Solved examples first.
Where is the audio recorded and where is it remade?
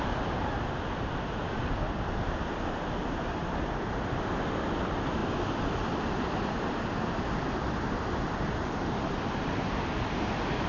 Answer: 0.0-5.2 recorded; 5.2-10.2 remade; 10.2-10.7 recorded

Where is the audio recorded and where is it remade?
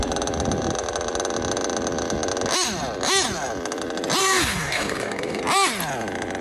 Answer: 0.0-4.2 recorded; 4.2-5.4 remade; 5.4-6.4 recorded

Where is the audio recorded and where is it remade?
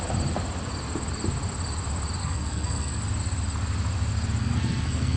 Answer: 0.0-2.2 recorded; 2.2-3.0 remade; 3.0-4.4 recorded; 4.4-5.2 remade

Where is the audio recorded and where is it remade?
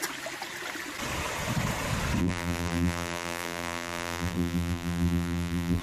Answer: 0.0-2.2 recorded; 2.2-5.8 remade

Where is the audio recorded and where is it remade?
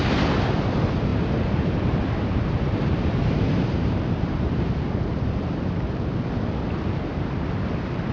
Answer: 0.0-1.1 recorded; 1.1-4.7 remade; 4.7-8.1 recorded